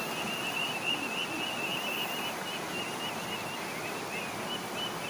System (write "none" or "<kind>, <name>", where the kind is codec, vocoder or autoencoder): none